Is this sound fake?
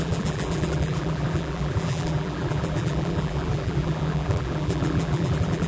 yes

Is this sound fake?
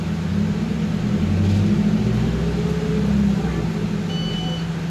no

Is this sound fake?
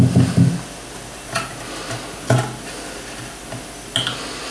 no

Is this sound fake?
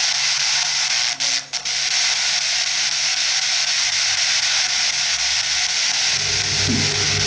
no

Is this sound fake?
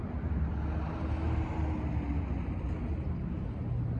no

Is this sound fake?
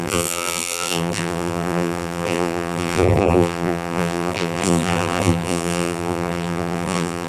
yes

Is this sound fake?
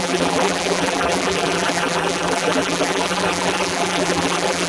yes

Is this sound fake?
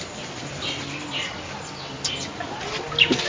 no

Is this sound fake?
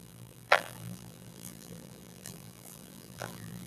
yes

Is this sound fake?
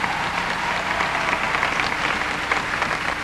no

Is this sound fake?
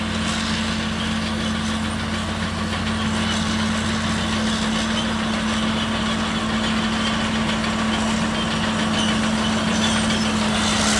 no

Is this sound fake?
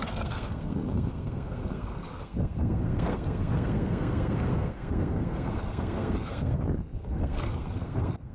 yes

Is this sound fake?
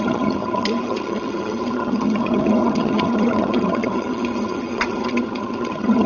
yes